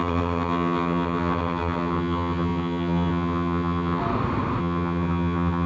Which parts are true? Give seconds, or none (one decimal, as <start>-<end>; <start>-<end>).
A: 4.0-4.6